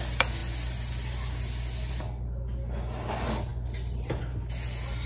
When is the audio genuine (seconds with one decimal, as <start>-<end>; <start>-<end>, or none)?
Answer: 0.0-5.1